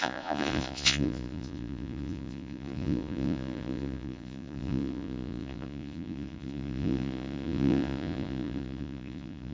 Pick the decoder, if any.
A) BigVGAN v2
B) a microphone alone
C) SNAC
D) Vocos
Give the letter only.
D